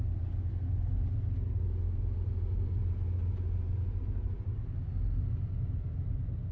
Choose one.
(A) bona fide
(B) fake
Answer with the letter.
A